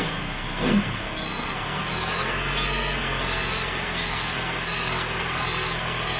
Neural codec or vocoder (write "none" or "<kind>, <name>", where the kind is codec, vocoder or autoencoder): codec, SNAC